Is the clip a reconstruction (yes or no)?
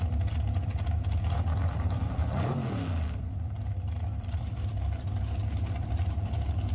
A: yes